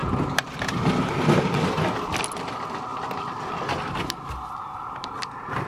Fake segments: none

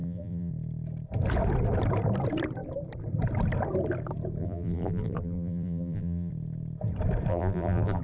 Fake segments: 0.0-0.5 (vocoder, BigVGAN v2); 4.4-6.3; 7.3-8.0

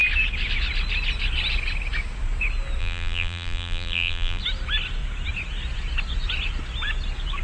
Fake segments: 2.8-4.4 (vocoder, BigVGAN v2)

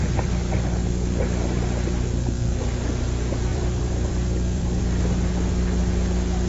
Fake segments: 3.5-4.8 (vocoder, BigVGAN v2)